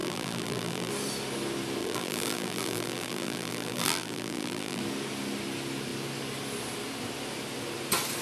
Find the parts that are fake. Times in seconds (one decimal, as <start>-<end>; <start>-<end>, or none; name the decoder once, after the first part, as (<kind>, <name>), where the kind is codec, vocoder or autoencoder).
0.0-0.9 (vocoder, BigVGAN v2); 1.8-4.8